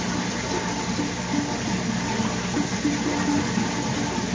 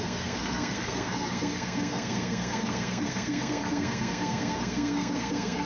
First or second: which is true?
first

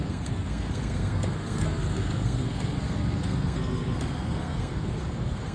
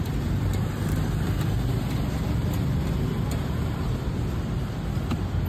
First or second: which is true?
second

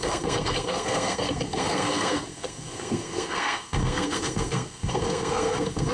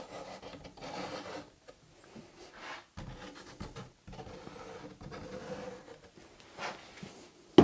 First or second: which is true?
second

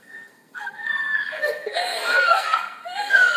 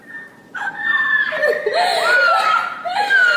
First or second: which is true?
second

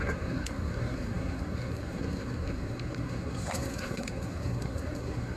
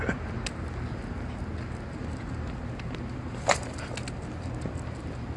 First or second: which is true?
second